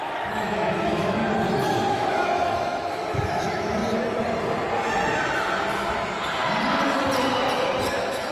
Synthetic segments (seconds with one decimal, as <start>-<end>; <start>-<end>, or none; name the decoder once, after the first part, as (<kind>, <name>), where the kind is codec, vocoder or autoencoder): 0.0-1.2 (autoencoder, DAC-VAE); 1.9-3.8; 7.9-8.3